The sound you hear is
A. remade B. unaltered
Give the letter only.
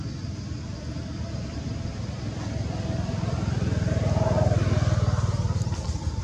B